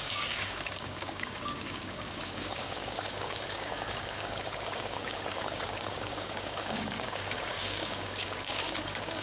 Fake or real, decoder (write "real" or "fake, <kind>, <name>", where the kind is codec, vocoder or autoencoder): fake, codec, DAC